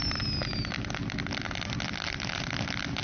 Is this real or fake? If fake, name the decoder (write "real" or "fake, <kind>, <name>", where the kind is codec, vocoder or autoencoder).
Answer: real